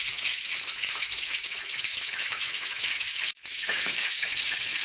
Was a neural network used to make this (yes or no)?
yes